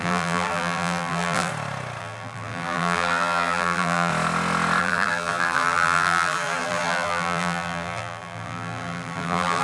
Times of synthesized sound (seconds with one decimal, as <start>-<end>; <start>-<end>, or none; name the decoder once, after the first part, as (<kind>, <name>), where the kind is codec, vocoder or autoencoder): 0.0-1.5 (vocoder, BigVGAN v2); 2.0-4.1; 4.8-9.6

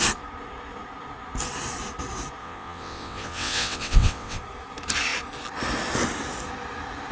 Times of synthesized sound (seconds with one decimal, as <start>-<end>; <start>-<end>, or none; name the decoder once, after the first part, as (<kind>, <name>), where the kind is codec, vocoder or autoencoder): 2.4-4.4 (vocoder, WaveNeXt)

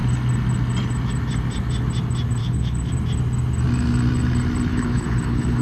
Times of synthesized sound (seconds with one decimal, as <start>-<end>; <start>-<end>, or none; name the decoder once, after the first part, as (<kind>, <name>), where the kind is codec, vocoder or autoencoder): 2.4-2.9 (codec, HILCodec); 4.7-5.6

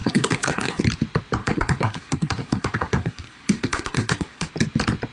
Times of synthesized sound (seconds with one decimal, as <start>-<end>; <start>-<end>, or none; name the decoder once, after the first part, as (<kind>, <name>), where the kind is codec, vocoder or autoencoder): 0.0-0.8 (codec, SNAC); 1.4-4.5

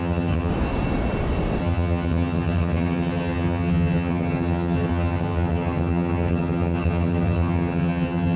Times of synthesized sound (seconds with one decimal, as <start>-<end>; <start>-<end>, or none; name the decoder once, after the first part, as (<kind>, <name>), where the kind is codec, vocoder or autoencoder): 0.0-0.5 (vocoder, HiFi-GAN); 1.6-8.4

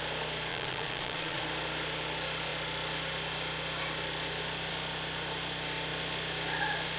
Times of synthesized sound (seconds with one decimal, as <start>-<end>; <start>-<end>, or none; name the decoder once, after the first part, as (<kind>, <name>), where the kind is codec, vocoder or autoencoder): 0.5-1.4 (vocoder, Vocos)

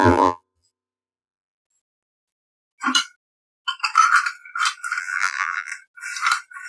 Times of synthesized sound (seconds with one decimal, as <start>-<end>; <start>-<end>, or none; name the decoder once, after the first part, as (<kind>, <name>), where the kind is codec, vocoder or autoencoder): 0.0-1.6 (vocoder, BigVGAN v2); 5.0-5.7